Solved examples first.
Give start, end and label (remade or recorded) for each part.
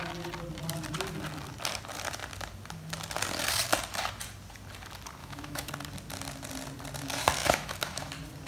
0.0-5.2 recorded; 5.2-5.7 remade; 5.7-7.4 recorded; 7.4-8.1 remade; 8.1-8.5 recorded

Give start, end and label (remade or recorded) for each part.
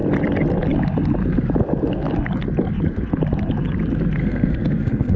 0.0-4.2 recorded; 4.2-5.2 remade